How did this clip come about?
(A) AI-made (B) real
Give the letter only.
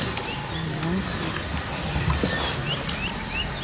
B